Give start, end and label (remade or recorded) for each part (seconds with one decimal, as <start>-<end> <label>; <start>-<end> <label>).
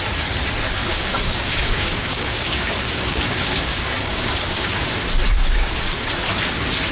0.0-0.8 recorded; 0.8-4.8 remade; 4.8-5.4 recorded; 5.4-6.1 remade; 6.1-6.9 recorded